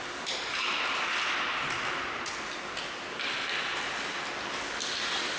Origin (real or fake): real